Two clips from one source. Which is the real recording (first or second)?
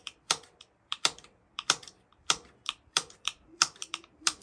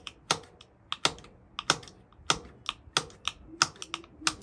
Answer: second